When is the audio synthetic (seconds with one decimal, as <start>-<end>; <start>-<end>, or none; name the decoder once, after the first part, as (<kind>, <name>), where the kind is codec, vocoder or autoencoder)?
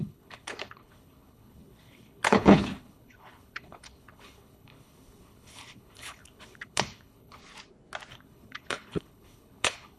0.0-7.4 (codec, HILCodec); 8.1-10.0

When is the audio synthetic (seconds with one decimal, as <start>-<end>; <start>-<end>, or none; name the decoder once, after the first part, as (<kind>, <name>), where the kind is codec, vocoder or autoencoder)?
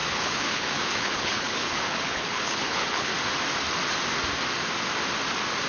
0.0-3.1 (codec, HILCodec)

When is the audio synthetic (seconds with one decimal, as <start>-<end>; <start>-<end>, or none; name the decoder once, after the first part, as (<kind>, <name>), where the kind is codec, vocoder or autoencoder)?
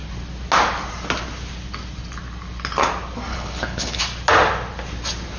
3.3-4.0 (codec, HILCodec)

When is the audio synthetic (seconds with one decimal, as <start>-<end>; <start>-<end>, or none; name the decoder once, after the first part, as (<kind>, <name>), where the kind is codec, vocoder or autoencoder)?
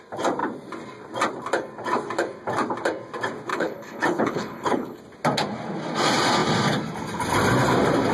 3.5-5.0 (codec, HILCodec)